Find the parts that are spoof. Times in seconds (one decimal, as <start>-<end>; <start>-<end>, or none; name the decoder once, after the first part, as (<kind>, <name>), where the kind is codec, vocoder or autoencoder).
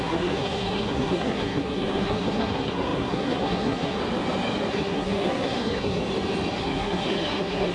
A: 0.0-4.0 (codec, SNAC); 4.7-6.0; 6.6-7.7